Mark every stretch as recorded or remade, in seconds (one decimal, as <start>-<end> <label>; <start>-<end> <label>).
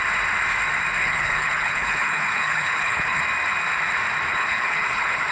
0.0-1.0 recorded; 1.0-3.2 remade; 3.2-4.3 recorded; 4.3-5.3 remade